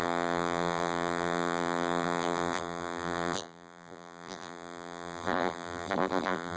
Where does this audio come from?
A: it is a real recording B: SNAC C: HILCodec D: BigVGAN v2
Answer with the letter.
D